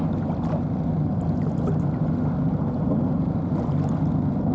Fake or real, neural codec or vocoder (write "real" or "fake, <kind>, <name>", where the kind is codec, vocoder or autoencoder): real